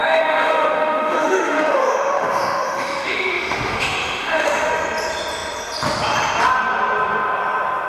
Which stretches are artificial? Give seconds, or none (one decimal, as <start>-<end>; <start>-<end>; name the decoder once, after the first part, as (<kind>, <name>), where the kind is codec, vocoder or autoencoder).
0.0-4.7 (autoencoder, DAC-VAE)

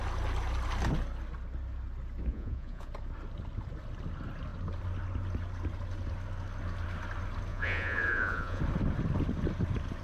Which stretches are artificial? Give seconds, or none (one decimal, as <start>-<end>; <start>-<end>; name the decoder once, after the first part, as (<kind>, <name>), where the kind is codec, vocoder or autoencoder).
2.3-2.9 (vocoder, Vocos); 7.5-8.6

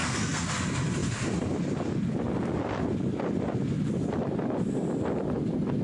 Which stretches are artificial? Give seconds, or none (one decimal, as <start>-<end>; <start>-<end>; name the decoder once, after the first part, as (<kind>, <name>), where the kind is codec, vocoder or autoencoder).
0.0-0.5 (codec, SNAC)